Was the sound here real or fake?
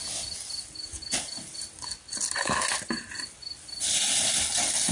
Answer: real